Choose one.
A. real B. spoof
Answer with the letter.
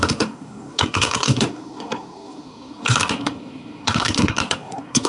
B